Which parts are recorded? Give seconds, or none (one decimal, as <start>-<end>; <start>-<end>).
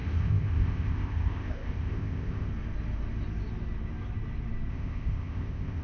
2.5-4.7